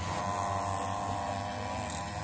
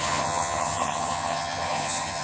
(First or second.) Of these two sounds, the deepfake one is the second